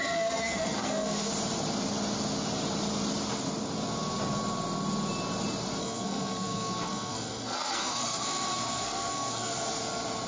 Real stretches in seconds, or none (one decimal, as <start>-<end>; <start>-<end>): 1.3-5.8; 9.5-10.3